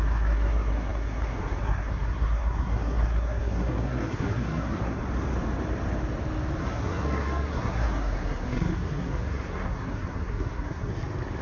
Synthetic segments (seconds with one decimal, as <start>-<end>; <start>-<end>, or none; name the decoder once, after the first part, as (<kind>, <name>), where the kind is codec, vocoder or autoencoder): 0.0-5.0 (codec, SNAC); 6.6-10.9